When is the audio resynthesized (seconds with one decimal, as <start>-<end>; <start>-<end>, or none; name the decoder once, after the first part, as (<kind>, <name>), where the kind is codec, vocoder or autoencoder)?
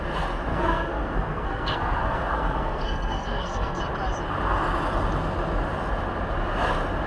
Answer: 0.5-3.8 (codec, SNAC)